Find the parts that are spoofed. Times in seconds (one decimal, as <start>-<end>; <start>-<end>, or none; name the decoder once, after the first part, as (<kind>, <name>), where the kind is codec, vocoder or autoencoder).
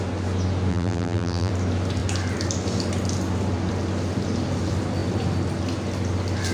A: 0.7-1.5 (vocoder, BigVGAN v2)